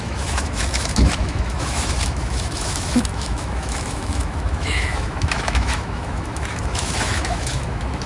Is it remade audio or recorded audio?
remade